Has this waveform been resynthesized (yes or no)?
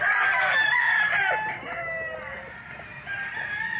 no